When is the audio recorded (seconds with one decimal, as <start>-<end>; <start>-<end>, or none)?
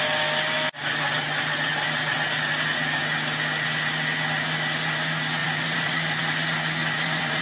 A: 0.0-5.4; 6.2-6.8